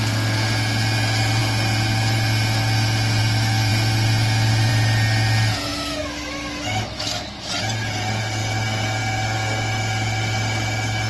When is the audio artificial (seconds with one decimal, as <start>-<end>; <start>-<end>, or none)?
5.7-7.5